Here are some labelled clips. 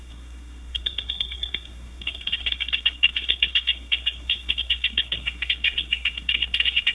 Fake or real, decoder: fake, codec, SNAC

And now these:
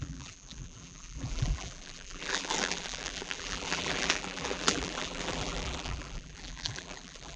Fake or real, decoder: fake, vocoder, BigVGAN v2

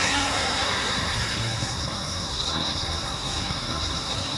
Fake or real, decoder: fake, codec, SNAC